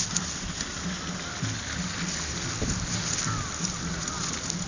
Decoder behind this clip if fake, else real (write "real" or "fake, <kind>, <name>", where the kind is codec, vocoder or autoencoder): real